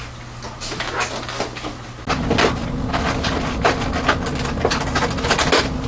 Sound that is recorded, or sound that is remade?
recorded